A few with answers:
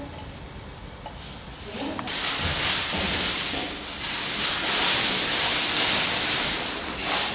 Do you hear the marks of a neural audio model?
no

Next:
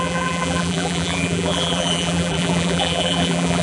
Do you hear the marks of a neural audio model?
yes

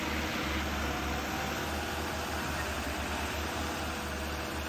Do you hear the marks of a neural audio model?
no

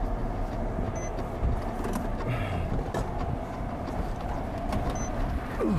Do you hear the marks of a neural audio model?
no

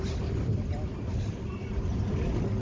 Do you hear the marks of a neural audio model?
no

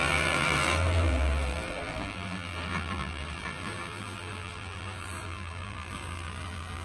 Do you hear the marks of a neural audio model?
yes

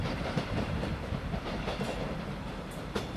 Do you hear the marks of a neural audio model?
yes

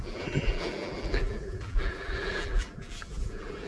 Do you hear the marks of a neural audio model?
yes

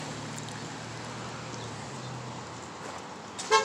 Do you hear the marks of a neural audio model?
no